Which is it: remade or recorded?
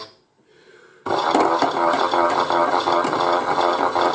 recorded